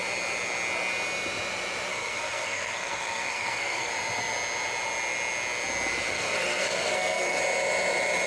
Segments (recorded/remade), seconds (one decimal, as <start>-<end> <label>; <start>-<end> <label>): 0.0-1.9 recorded; 1.9-3.9 remade; 3.9-6.1 recorded; 6.1-7.4 remade; 7.4-8.3 recorded